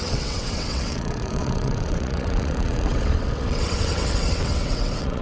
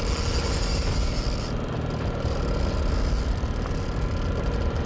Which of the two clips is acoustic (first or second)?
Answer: second